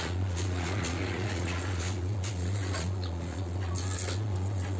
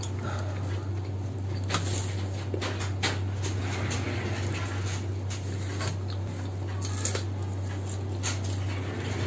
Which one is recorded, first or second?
second